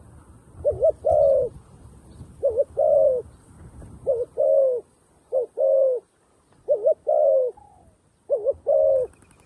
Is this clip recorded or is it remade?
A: recorded